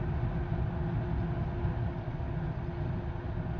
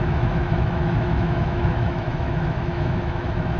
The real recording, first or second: first